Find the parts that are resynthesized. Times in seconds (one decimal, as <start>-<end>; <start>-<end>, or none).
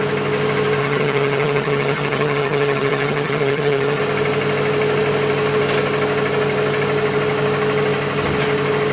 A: 0.8-4.0